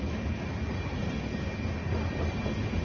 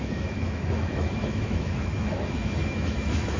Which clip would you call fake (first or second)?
second